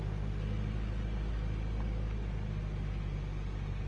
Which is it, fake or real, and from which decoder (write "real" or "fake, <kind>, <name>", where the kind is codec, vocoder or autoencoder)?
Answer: real